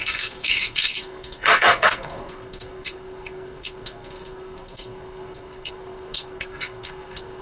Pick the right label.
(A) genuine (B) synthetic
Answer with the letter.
B